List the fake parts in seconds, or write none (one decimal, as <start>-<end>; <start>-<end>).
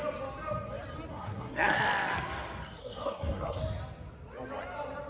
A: 1.1-1.8; 2.8-3.6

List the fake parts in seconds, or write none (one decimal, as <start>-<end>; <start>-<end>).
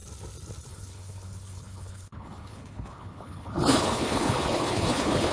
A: 0.7-5.3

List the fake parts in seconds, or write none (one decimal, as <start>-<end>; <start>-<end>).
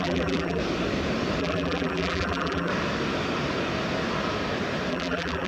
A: 0.0-0.6; 1.4-2.7; 4.9-5.5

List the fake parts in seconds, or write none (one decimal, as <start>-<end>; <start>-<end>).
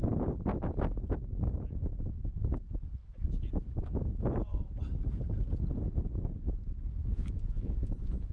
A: 7.0-8.3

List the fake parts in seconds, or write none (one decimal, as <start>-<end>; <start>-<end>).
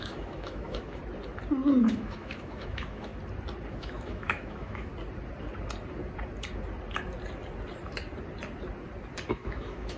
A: 0.0-1.0; 1.8-3.1; 3.7-4.9; 9.3-10.0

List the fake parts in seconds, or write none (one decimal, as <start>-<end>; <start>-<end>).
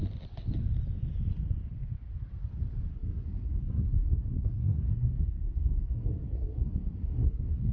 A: 2.9-7.7